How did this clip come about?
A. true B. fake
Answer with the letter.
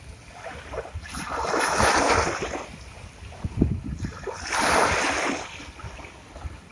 A